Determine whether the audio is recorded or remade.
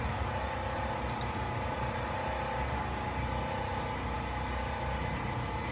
recorded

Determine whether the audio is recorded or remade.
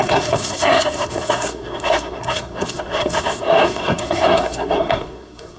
remade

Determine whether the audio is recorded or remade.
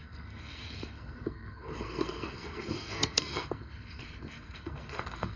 remade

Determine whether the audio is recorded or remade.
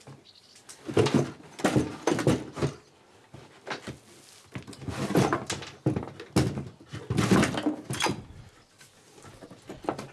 recorded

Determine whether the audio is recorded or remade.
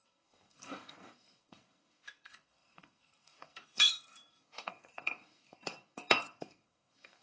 remade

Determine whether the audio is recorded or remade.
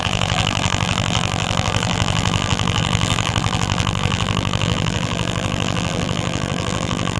remade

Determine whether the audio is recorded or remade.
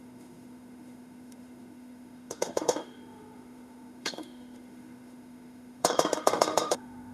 remade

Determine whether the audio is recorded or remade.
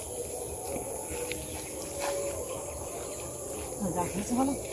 recorded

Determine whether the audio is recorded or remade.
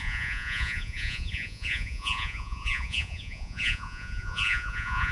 remade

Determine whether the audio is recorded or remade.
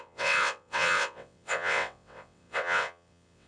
remade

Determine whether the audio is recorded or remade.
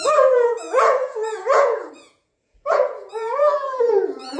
remade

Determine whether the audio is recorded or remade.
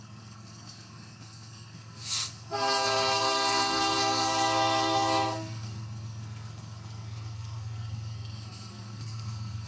remade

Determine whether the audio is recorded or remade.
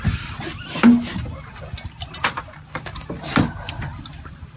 recorded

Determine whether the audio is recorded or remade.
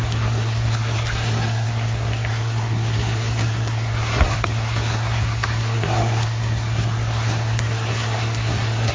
remade